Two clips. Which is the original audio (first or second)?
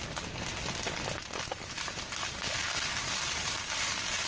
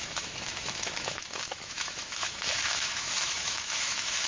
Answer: first